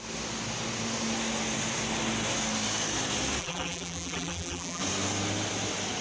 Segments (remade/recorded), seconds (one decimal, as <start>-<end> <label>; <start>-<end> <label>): 0.0-3.4 recorded; 3.4-4.8 remade; 4.8-6.0 recorded